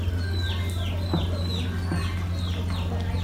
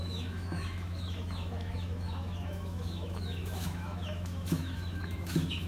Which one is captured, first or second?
first